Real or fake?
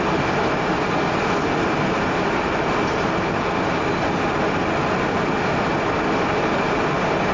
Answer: real